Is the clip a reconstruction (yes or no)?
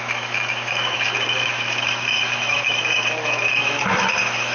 yes